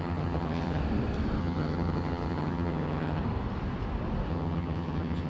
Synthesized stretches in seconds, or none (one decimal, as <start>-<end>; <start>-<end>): 0.0-0.8; 1.4-3.2; 4.3-5.3